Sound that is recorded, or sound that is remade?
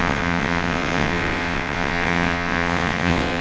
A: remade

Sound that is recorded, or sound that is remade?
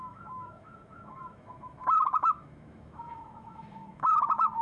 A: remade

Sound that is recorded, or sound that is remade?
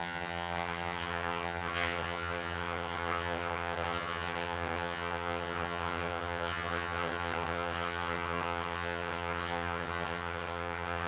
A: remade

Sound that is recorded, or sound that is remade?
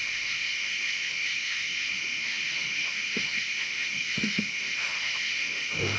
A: remade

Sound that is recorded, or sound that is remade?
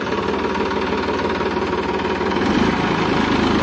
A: recorded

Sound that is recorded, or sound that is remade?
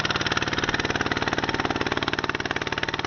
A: recorded